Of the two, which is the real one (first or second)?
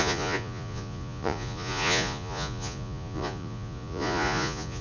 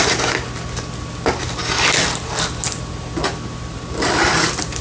second